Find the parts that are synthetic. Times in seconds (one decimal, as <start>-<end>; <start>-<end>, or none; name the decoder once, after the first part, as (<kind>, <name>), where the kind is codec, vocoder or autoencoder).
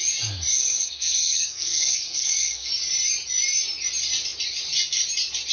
0.5-2.7 (codec, SNAC)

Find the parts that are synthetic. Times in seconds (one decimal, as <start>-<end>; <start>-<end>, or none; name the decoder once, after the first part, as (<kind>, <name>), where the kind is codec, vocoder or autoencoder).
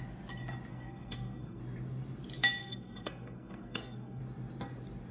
0.7-1.6 (codec, SNAC); 2.6-4.2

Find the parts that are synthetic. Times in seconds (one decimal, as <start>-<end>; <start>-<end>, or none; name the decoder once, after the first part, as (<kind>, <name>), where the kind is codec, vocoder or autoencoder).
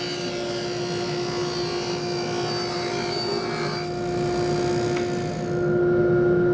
none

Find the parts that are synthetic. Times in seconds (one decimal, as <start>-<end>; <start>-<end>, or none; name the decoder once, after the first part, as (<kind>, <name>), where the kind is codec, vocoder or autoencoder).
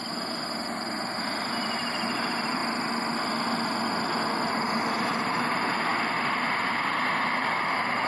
0.0-2.6 (vocoder, BigVGAN v2); 4.5-5.9; 6.5-8.1